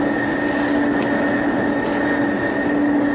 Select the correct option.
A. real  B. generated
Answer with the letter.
A